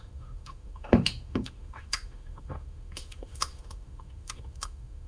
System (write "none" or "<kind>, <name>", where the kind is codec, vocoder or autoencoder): autoencoder, DAC-VAE